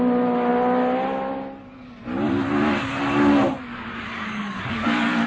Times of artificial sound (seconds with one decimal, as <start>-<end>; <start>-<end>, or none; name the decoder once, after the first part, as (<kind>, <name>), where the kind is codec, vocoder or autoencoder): 4.1-5.3 (codec, DAC)